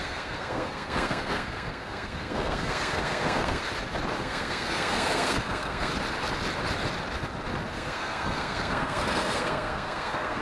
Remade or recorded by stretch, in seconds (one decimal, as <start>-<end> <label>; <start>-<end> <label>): 0.0-3.6 remade; 3.6-4.2 recorded; 4.2-5.9 remade; 5.9-7.7 recorded; 7.7-10.4 remade